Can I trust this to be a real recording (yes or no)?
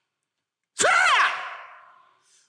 yes